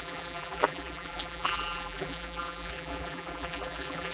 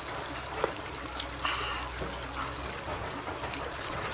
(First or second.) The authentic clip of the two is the second